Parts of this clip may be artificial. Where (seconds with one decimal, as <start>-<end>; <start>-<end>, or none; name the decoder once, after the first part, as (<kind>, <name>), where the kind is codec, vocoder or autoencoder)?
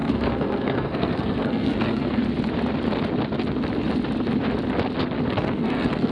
0.0-2.2 (codec, SNAC); 5.3-6.1